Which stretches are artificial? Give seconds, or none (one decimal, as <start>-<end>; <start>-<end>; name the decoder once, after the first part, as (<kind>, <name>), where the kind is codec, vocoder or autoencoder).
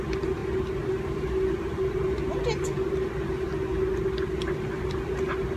none